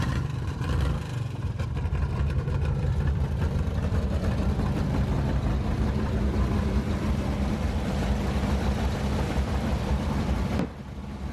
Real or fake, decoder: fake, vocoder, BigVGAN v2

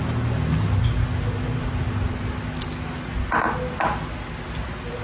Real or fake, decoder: real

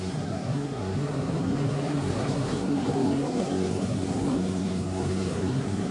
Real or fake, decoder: fake, codec, SNAC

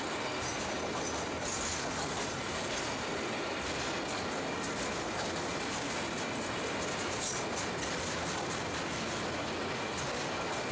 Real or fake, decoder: real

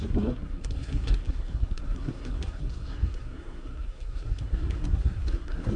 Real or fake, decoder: fake, codec, SNAC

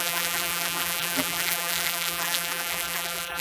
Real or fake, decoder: fake, vocoder, BigVGAN v2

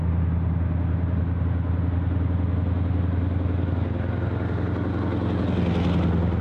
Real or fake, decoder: real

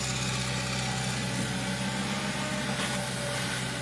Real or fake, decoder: real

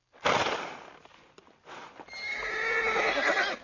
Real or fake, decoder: real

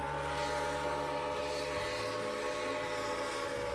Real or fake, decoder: real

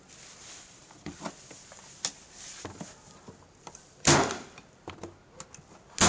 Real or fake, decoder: real